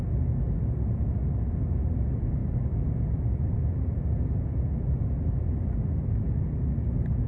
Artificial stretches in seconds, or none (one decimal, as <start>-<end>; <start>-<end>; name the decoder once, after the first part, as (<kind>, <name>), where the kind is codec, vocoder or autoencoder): 2.4-6.6 (vocoder, BigVGAN v2)

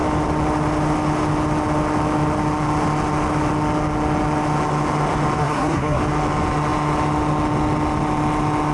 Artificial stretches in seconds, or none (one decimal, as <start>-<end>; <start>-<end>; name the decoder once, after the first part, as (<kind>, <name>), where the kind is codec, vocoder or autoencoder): 5.4-6.0 (codec, SNAC)

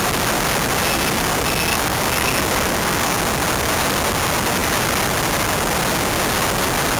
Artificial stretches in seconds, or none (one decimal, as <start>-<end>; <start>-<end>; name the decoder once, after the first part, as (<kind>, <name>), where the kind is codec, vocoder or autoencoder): 1.7-3.2 (codec, DAC)